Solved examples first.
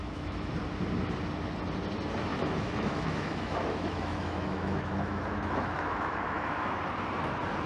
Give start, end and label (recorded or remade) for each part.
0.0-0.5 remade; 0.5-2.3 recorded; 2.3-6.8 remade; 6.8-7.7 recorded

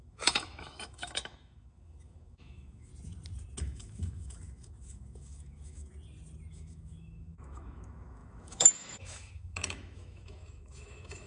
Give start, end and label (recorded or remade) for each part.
0.0-2.9 remade; 2.9-3.6 recorded; 3.6-5.9 remade; 5.9-6.5 recorded; 6.5-11.3 remade

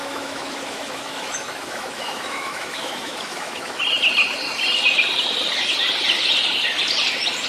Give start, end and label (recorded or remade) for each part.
0.0-3.8 remade; 3.8-7.5 recorded

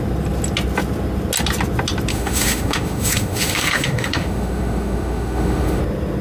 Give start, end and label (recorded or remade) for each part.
0.0-2.1 recorded; 2.1-5.8 remade; 5.8-6.2 recorded